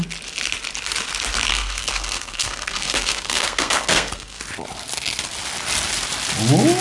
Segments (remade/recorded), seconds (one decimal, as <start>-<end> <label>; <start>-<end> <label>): 0.0-1.5 recorded; 1.5-4.4 remade; 4.4-6.8 recorded